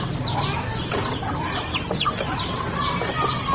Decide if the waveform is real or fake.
real